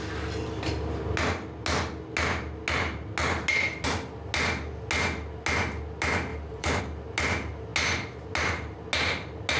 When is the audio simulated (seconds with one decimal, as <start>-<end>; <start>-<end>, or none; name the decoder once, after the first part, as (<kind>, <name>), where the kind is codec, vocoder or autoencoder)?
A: 6.3-6.8 (vocoder, BigVGAN v2)